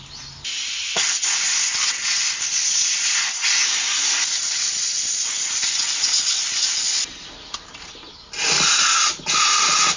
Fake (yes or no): no